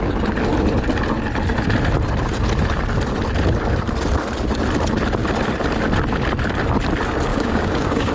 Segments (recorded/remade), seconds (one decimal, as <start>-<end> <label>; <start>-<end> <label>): 0.0-7.3 recorded; 7.3-8.1 remade